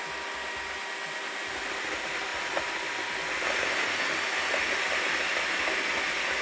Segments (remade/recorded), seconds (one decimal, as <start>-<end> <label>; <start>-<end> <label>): 0.0-6.4 recorded